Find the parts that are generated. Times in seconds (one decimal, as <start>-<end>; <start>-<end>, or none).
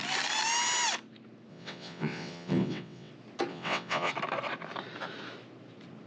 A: 1.5-3.1; 3.5-4.1